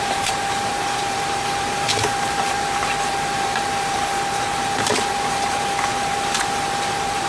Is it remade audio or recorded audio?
remade